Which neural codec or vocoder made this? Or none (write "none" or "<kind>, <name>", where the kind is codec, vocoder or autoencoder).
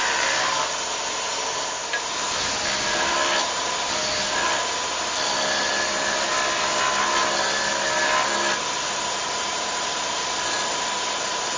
none